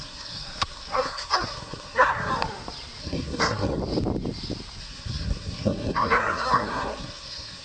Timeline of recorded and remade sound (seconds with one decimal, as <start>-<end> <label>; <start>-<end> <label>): 0.0-2.3 remade; 2.3-3.0 recorded; 3.0-3.8 remade; 3.8-4.8 recorded; 4.8-7.6 remade